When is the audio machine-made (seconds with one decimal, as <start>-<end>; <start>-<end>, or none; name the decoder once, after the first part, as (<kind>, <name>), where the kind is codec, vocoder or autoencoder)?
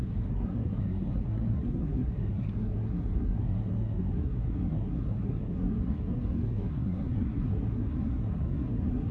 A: 0.0-9.1 (codec, SNAC)